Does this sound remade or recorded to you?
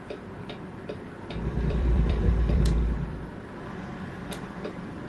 remade